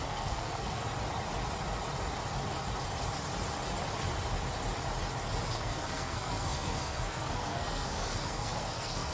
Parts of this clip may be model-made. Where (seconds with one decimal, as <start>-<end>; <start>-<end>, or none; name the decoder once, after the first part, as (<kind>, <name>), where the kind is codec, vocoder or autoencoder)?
0.0-0.8 (codec, SNAC); 5.5-9.1